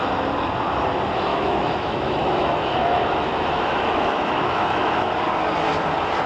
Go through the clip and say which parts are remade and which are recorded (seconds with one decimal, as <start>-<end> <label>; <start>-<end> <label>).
0.0-1.3 recorded; 1.3-5.1 remade; 5.1-6.3 recorded